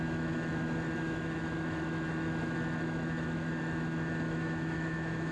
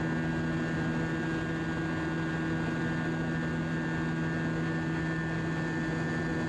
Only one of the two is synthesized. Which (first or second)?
first